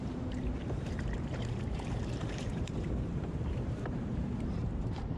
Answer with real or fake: fake